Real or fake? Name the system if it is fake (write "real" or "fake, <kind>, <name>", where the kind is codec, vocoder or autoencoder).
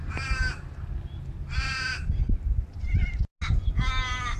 real